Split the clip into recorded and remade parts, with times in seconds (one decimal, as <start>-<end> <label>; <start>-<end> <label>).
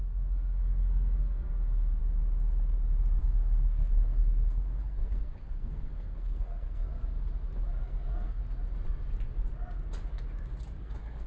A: 0.0-2.0 remade; 2.0-3.2 recorded; 3.2-6.9 remade; 6.9-7.8 recorded; 7.8-8.4 remade; 8.4-10.8 recorded; 10.8-11.3 remade